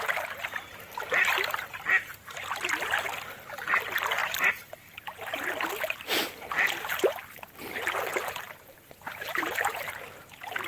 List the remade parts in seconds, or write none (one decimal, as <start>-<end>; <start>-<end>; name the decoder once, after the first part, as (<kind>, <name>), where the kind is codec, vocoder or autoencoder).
4.2-5.5 (vocoder, BigVGAN v2); 8.1-9.9